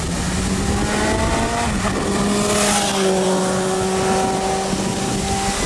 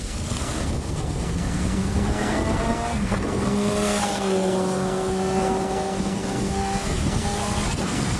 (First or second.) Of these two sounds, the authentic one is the first